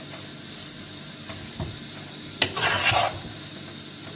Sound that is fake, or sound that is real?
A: real